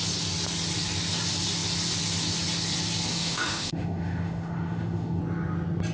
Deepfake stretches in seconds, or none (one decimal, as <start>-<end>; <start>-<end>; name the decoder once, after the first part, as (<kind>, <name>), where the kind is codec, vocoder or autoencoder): 3.1-5.2 (autoencoder, DAC-VAE)